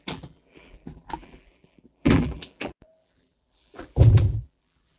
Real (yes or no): no